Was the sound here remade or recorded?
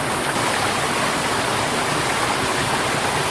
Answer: recorded